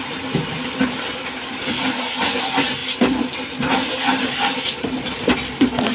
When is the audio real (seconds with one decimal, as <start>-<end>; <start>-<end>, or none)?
0.0-5.9